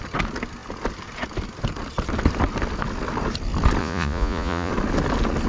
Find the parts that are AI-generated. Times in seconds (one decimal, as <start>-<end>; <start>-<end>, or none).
3.8-4.7